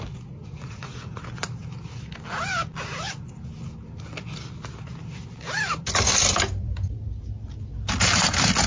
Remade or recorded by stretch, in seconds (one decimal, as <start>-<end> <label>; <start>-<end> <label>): 0.0-0.4 recorded; 0.4-1.2 remade; 1.2-8.7 recorded